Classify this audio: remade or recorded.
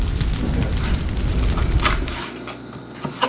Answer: recorded